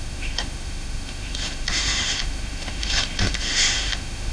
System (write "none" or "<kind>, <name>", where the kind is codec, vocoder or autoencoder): autoencoder, DAC-VAE